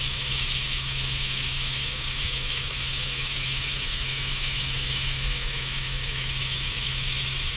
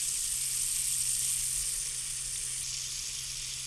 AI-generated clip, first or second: first